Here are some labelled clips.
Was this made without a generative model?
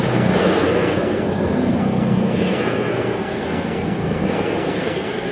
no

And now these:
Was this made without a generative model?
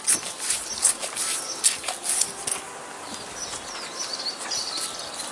yes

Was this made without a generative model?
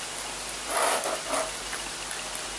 yes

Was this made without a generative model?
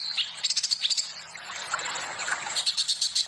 yes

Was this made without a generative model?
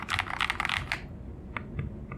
yes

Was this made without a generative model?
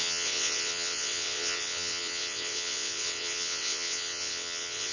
no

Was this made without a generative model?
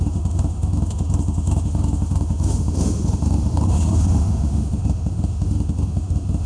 no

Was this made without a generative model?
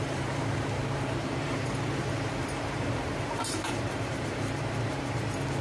no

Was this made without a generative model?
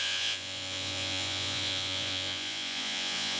no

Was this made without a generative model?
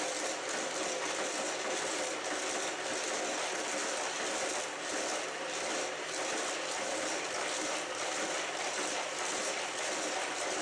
yes